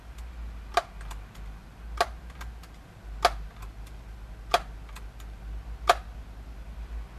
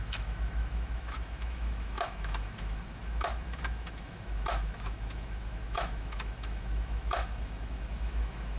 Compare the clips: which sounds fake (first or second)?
second